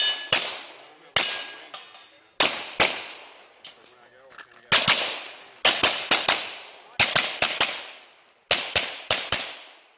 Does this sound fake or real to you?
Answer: real